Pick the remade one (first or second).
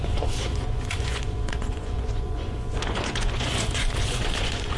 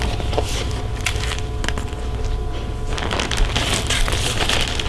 first